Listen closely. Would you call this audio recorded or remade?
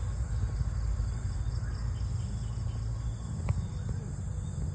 recorded